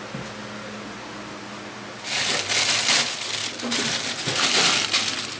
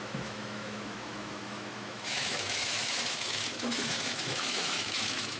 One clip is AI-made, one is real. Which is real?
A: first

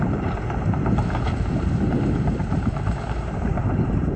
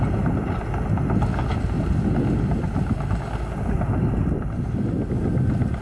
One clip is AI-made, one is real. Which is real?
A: second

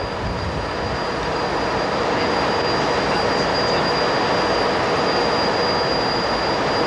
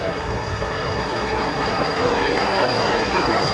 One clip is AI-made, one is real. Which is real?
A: first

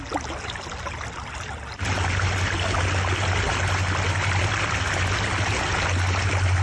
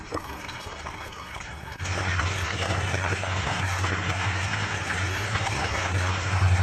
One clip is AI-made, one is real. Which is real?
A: first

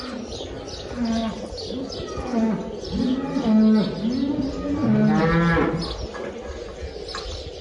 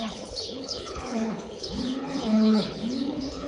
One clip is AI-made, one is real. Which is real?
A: first